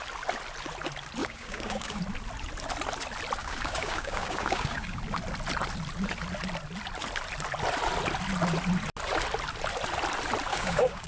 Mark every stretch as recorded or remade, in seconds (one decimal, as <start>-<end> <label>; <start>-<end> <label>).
0.0-1.2 recorded; 1.2-2.0 remade; 2.0-3.4 recorded; 3.4-5.0 remade; 5.0-10.5 recorded; 10.5-11.1 remade